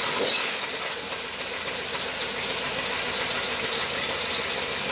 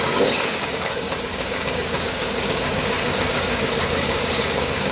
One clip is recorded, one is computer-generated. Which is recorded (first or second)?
first